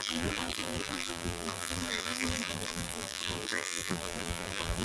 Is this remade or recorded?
remade